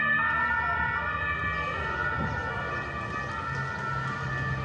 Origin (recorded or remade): recorded